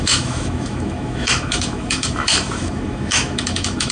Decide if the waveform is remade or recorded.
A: remade